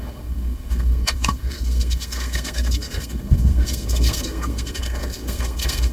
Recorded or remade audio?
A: remade